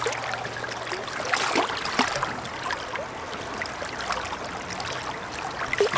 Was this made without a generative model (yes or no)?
yes